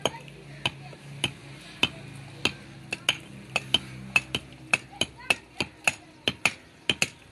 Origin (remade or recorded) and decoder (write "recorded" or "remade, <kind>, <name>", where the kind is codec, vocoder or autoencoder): recorded